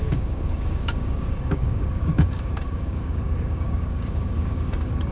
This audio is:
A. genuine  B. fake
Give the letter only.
B